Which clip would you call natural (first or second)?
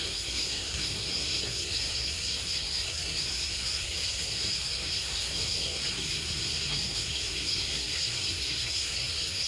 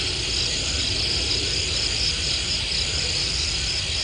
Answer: second